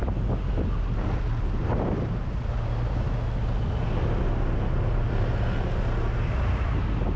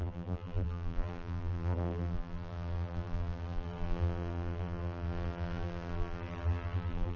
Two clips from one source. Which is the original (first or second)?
first